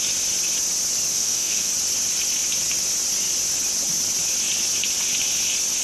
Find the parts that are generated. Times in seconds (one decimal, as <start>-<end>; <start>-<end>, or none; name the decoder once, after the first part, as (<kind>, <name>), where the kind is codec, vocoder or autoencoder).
1.1-1.7 (autoencoder, DAC-VAE)